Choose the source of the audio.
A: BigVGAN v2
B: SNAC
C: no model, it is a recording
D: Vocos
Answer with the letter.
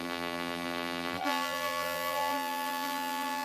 A